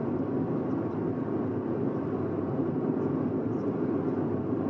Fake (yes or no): no